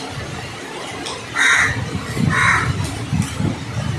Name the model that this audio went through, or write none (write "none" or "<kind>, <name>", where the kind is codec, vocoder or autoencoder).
none